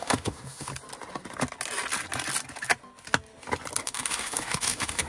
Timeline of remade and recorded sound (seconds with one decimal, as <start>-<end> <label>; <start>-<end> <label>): 0.0-0.7 remade; 0.7-3.8 recorded; 3.8-5.1 remade